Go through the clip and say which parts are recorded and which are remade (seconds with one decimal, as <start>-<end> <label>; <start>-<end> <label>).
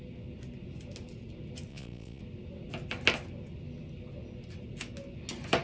0.0-1.7 recorded; 1.7-2.2 remade; 2.2-5.6 recorded